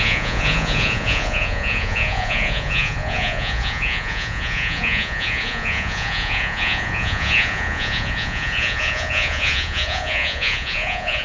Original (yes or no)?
no